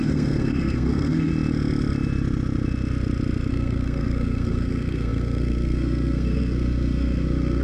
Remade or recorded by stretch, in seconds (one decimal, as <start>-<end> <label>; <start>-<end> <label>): 0.0-1.3 remade; 1.3-3.5 recorded; 3.5-7.6 remade